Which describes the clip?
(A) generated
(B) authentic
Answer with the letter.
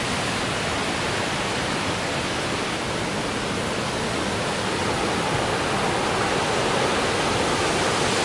B